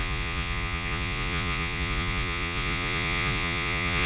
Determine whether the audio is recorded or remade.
remade